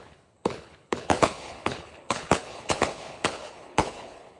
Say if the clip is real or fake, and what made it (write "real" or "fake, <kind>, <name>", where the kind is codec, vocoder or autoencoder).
fake, codec, HILCodec